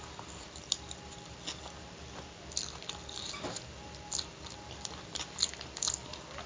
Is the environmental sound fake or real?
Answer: real